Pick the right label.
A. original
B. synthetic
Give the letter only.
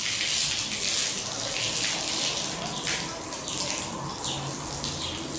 A